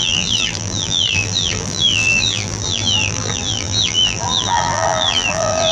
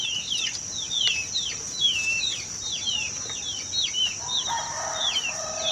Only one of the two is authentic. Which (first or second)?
second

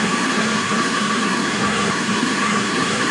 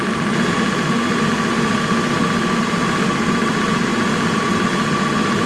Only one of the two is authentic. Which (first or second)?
second